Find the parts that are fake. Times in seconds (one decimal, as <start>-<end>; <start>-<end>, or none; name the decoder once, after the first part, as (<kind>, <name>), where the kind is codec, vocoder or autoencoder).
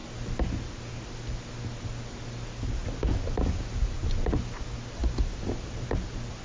none